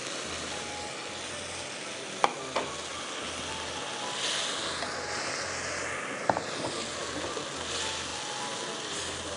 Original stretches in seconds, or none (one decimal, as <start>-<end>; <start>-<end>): 0.0-9.4